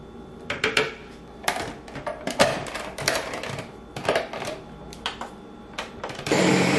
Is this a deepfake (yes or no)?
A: yes